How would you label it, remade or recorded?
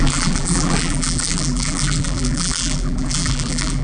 remade